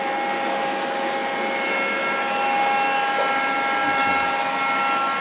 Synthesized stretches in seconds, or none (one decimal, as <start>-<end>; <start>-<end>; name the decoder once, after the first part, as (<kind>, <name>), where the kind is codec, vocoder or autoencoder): none

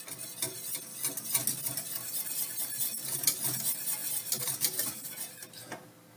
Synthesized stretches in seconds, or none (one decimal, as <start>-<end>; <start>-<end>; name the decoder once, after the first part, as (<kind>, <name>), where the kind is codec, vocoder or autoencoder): none

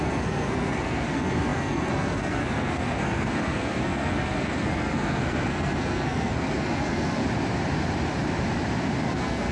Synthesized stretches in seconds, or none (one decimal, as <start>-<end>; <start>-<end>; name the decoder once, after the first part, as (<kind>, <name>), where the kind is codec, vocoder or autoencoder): 0.0-7.2 (codec, SNAC); 9.0-9.5

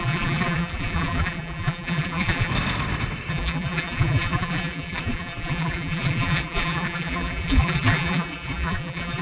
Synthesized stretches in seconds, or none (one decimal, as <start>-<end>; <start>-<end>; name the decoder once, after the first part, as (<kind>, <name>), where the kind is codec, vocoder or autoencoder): 0.0-2.5 (vocoder, BigVGAN v2); 3.3-9.2

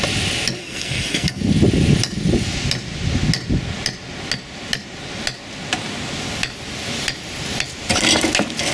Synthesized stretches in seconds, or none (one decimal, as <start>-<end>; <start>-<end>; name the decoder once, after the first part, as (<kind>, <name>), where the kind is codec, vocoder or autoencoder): 0.6-1.4 (codec, SNAC)

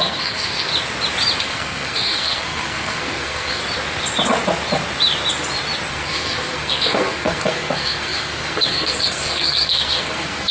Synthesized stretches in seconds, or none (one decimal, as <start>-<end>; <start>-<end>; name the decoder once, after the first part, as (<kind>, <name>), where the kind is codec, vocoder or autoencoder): 0.0-0.7 (codec, SNAC); 1.4-3.6; 5.9-10.5